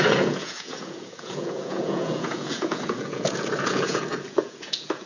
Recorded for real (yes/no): no